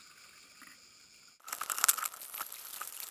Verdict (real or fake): real